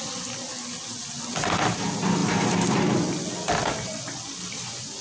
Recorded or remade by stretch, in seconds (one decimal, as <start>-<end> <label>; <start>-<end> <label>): 0.0-2.2 recorded; 2.2-2.8 remade; 2.8-5.0 recorded